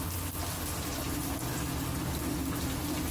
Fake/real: real